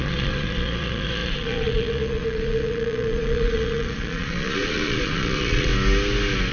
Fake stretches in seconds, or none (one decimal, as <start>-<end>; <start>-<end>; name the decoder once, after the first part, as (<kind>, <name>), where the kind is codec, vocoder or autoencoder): 0.0-5.7 (vocoder, Vocos)